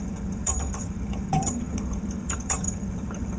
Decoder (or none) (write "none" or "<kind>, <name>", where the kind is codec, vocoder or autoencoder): vocoder, HiFi-GAN